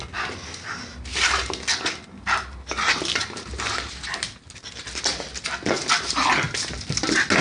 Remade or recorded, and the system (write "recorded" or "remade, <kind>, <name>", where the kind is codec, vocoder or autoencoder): recorded